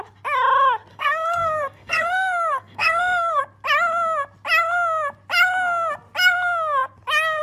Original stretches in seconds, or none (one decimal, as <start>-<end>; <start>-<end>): 0.0-0.9; 3.4-7.4